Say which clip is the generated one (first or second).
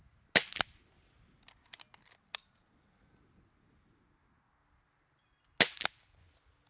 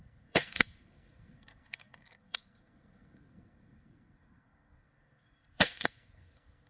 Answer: second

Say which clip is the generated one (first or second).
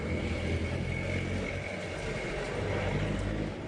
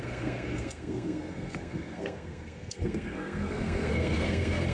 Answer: second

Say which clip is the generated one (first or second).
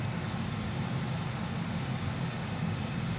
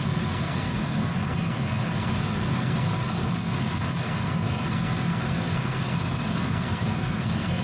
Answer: second